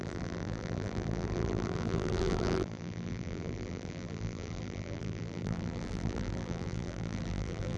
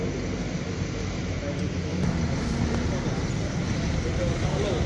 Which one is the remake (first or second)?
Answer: first